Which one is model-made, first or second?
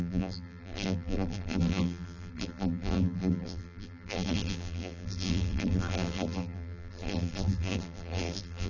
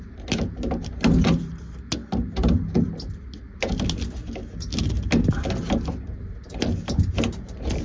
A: first